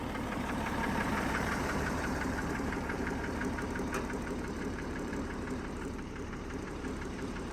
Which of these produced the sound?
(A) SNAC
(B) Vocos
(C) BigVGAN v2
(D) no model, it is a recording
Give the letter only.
C